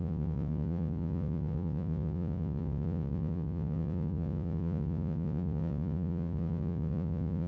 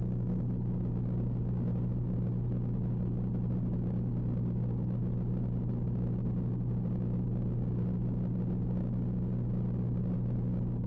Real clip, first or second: second